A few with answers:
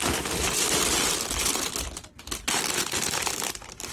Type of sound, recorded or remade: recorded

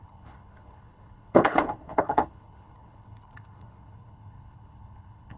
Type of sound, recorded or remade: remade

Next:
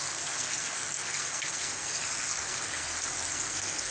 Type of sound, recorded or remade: remade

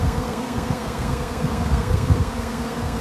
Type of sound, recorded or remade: remade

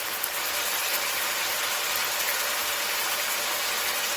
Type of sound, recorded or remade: recorded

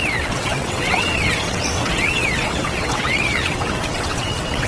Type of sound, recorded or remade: remade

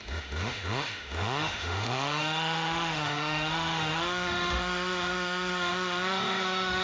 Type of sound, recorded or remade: remade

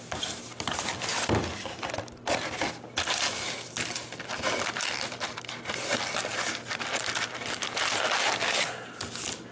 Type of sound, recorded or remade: recorded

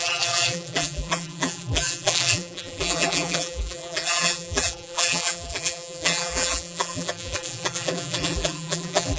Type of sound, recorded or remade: remade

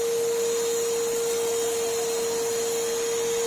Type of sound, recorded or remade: recorded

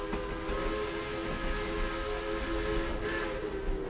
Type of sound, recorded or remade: recorded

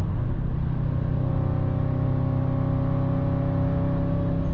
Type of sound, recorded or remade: recorded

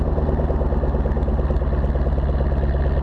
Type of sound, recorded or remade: recorded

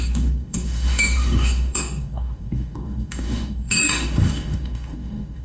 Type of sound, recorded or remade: remade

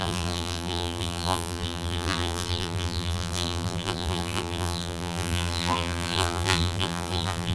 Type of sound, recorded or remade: remade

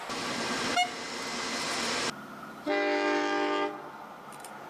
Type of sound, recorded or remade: recorded